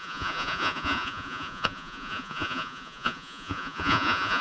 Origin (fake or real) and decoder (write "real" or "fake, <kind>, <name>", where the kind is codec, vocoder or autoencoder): fake, vocoder, Vocos